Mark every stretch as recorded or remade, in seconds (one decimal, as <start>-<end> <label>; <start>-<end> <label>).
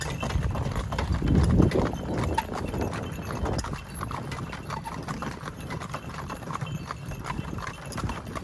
0.0-5.2 recorded; 5.2-6.6 remade; 6.6-8.4 recorded